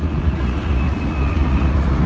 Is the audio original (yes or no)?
no